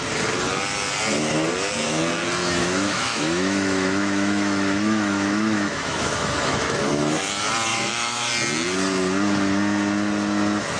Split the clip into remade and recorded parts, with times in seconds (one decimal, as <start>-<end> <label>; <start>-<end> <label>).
0.0-2.6 recorded; 2.6-6.9 remade; 6.9-7.7 recorded; 7.7-8.3 remade; 8.3-10.8 recorded